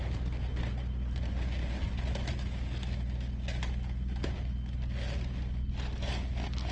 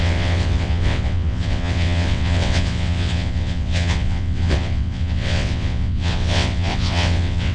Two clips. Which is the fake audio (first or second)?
second